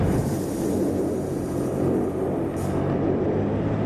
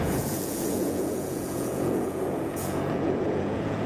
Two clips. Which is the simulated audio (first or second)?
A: second